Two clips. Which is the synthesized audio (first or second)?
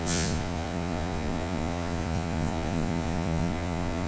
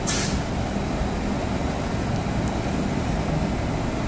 first